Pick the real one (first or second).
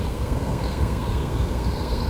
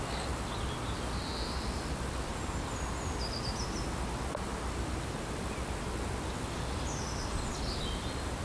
second